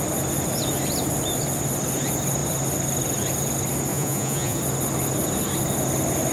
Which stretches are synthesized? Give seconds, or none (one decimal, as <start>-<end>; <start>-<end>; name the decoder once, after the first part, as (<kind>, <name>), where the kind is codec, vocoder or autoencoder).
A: 3.9-4.6 (vocoder, Vocos)